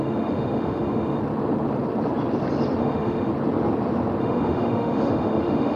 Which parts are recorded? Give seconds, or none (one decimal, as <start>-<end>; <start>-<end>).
1.2-2.8; 3.3-4.2